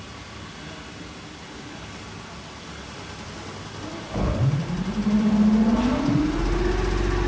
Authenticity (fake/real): real